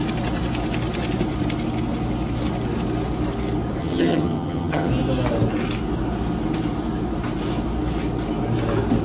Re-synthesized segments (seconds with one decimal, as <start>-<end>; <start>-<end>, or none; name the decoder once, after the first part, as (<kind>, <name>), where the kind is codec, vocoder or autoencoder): 3.8-4.9 (vocoder, HiFi-GAN)